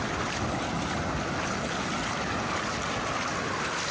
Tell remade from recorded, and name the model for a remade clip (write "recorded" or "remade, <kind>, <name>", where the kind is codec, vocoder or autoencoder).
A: recorded